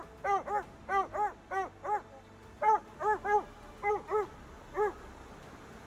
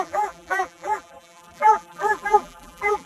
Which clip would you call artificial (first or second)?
second